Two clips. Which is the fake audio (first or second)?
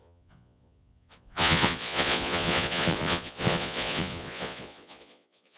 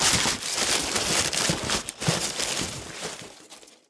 first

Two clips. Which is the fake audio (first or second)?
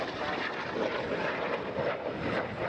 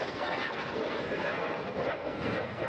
second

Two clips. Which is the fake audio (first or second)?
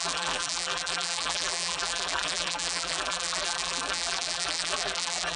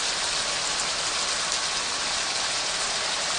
first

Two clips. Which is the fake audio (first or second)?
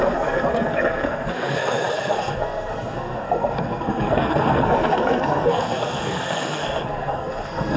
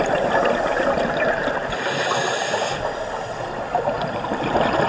first